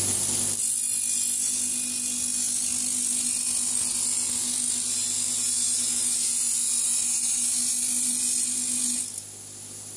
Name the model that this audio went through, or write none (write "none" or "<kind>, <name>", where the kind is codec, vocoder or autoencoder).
none